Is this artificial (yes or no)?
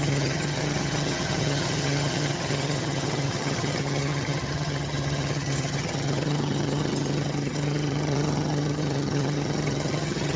yes